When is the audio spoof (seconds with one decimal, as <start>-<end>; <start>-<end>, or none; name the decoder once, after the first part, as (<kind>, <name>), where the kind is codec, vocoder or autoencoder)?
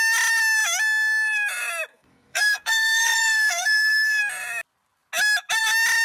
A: 1.9-4.2 (codec, SNAC)